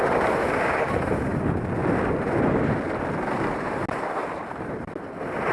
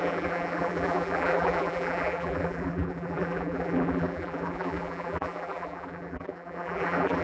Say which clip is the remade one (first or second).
second